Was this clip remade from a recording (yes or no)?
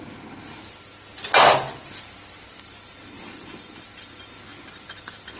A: no